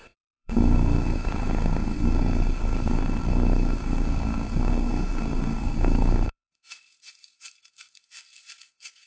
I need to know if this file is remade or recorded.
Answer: remade